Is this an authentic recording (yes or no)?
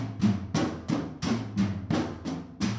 yes